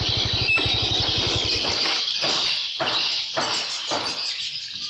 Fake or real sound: real